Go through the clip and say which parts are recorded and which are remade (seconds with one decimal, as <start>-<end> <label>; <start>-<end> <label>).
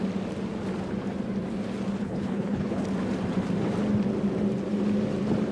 0.0-2.0 recorded; 2.0-2.8 remade; 2.8-5.5 recorded